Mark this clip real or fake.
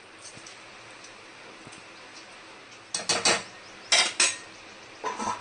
real